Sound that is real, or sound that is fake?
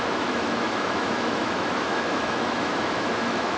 fake